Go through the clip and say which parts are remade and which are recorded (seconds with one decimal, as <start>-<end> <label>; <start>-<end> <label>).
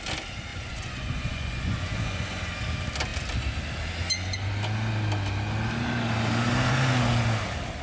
0.0-0.5 recorded; 0.5-2.4 remade; 2.4-7.8 recorded